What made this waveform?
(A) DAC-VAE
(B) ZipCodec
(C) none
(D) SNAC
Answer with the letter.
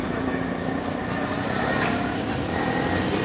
C